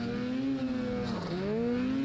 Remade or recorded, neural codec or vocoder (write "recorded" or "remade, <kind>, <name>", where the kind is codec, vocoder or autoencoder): recorded